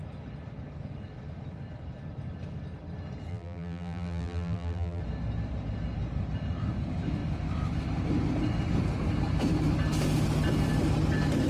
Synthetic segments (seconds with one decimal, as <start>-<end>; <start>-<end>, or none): 3.3-5.0